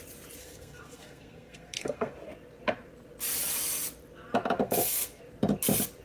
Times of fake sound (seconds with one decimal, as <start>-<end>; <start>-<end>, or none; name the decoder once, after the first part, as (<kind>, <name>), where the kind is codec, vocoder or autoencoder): 0.4-2.1 (codec, SNAC); 4.6-5.2